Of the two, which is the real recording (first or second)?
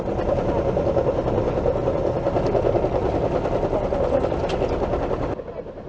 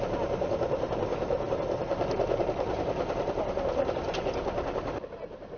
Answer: first